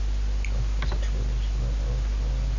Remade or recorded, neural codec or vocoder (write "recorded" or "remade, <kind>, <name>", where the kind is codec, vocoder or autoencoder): recorded